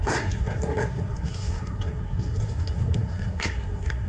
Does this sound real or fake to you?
fake